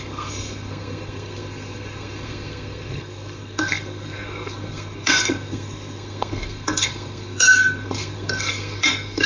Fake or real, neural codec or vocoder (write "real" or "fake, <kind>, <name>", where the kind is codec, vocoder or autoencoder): fake, codec, SNAC